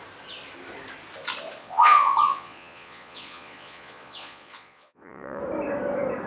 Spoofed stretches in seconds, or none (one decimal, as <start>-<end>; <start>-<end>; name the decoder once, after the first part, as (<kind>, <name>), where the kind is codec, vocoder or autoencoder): 1.6-5.4 (vocoder, Vocos)